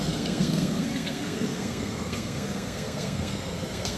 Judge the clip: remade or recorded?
remade